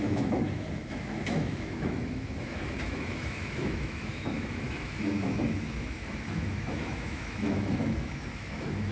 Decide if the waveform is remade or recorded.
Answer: remade